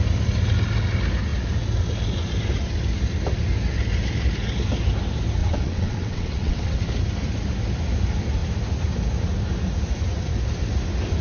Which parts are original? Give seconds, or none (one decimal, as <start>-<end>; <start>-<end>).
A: 0.0-5.4; 6.8-11.2